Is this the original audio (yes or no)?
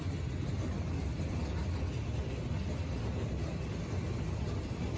yes